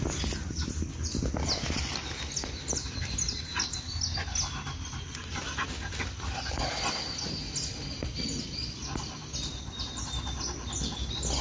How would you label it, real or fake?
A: real